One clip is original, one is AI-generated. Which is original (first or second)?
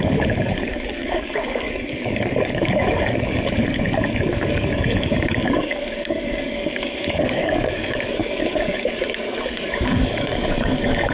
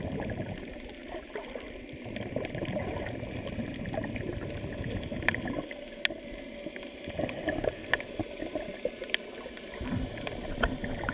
second